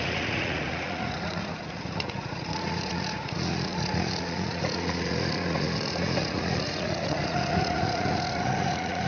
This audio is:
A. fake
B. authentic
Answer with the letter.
A